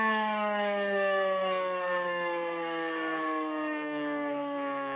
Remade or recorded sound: remade